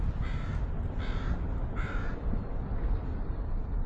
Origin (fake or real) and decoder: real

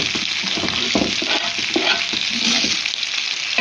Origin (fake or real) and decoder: real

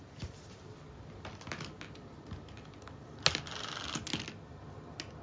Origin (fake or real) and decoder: real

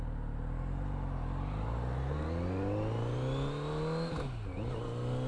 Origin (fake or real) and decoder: real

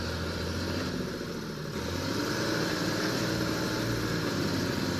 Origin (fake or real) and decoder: fake, vocoder, BigVGAN v2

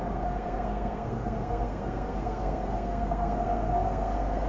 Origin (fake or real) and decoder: fake, codec, SNAC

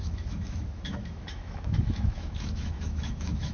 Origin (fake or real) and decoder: fake, autoencoder, DAC-VAE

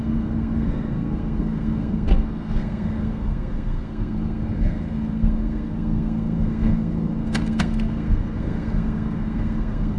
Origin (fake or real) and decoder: fake, codec, SNAC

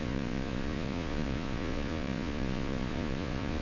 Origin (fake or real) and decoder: fake, vocoder, Vocos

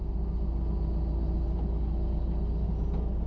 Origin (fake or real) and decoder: real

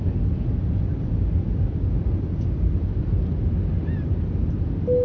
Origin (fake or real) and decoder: real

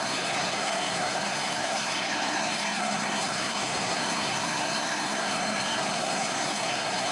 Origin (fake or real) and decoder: fake, codec, SNAC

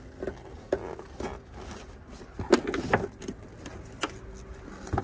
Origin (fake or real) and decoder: real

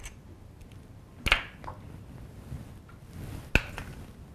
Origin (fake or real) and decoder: real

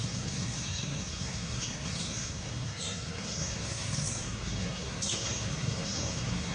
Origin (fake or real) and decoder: fake, codec, SNAC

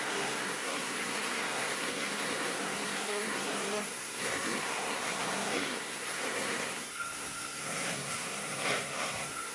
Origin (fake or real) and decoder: fake, codec, SNAC